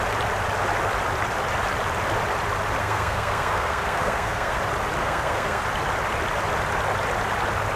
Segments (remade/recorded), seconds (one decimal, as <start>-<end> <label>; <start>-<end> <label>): 0.0-2.8 recorded; 2.8-4.6 remade; 4.6-5.0 recorded; 5.0-5.6 remade; 5.6-7.8 recorded